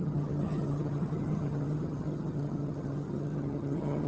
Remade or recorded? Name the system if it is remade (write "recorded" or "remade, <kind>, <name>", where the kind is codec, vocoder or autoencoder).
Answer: remade, vocoder, HiFi-GAN